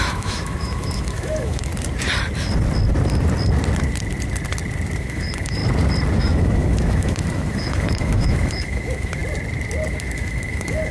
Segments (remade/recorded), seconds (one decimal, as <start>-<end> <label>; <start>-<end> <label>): 0.0-1.7 remade; 1.7-5.0 recorded; 5.0-5.6 remade; 5.6-6.2 recorded; 6.2-9.2 remade; 9.2-9.9 recorded; 9.9-10.9 remade

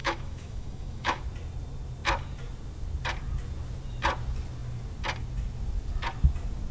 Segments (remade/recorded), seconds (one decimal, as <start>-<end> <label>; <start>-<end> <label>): 0.0-1.2 remade; 1.2-6.7 recorded

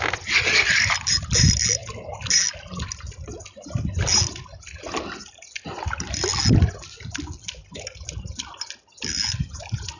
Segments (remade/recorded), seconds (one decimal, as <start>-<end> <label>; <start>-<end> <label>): 0.0-10.0 recorded

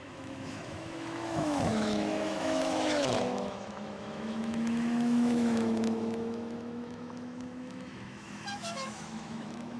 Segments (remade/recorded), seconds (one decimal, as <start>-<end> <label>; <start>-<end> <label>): 0.0-9.8 remade

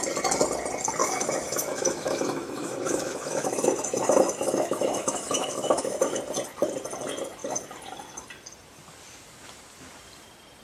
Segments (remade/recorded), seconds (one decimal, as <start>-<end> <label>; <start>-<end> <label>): 0.0-1.0 recorded; 1.0-6.2 remade; 6.2-10.6 recorded

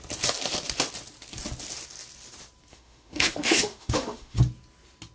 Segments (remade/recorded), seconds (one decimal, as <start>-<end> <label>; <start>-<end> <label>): 0.0-2.7 recorded; 2.7-4.4 remade; 4.4-5.1 recorded

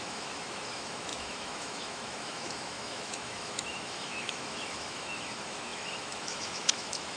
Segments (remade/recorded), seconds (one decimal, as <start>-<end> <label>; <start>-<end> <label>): 0.0-7.2 remade

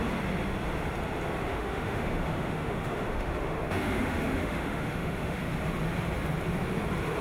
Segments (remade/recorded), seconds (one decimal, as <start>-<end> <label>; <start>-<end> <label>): 0.0-1.5 recorded; 1.5-5.4 remade; 5.4-7.2 recorded